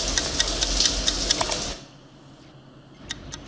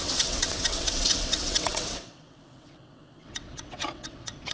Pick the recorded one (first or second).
first